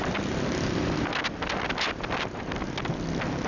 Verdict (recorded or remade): recorded